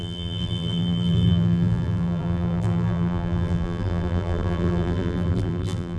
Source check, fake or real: fake